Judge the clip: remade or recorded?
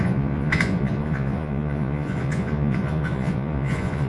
remade